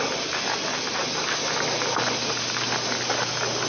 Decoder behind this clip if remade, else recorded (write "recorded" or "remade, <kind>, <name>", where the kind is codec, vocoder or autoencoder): recorded